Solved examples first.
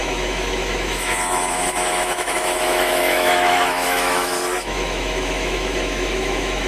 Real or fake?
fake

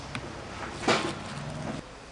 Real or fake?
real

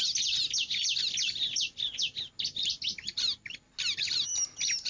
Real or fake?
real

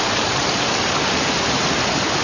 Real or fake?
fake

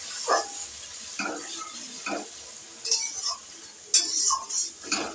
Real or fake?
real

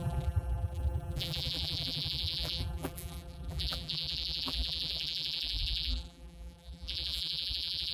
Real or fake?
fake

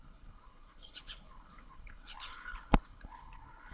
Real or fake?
fake